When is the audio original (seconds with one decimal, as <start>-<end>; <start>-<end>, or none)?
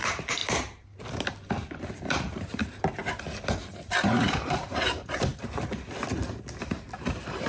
0.4-1.8; 3.0-3.7; 5.3-6.6